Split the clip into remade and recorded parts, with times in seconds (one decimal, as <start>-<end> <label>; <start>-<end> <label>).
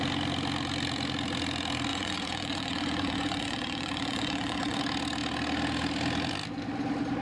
0.0-1.9 recorded; 1.9-4.8 remade; 4.8-7.2 recorded